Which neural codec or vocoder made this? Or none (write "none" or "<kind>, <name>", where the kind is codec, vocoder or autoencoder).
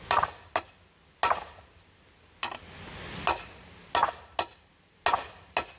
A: none